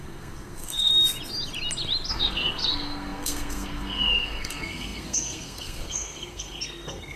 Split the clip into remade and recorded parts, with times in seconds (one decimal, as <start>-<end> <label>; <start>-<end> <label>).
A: 0.0-0.9 remade; 0.9-2.1 recorded; 2.1-7.2 remade